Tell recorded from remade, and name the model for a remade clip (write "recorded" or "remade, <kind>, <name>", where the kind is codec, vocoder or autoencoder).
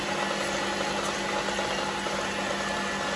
recorded